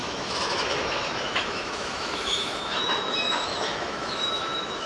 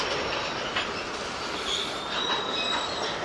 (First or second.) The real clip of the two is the second